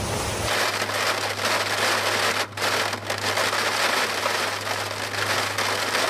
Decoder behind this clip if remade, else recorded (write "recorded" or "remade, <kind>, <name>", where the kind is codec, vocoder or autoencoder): recorded